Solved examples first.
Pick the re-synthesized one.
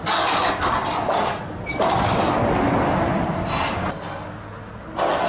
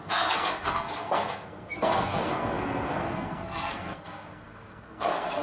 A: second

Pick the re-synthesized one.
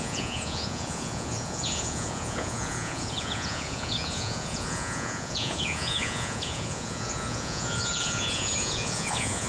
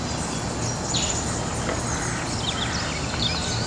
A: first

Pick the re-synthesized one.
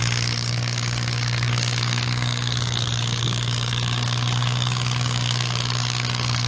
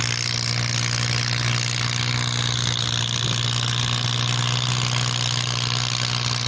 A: first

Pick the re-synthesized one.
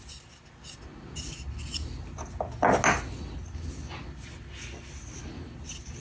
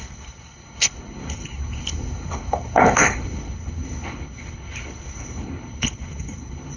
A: second